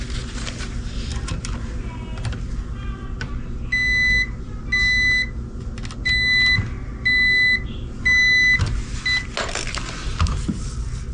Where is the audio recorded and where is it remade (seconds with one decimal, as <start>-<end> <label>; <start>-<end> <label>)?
0.0-11.1 recorded